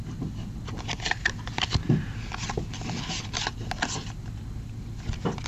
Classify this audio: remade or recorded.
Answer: recorded